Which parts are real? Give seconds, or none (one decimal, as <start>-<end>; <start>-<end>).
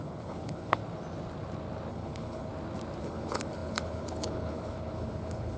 0.8-1.9; 2.5-3.0